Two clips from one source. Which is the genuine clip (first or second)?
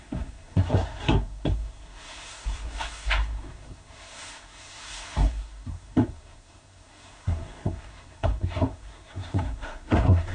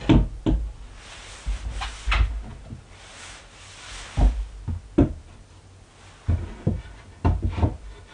second